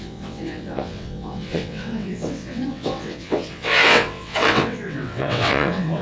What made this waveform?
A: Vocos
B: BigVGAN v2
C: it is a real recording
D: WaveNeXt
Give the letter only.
D